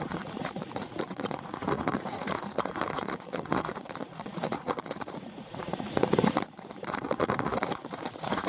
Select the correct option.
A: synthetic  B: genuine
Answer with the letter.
A